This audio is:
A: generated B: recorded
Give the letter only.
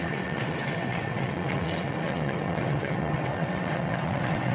A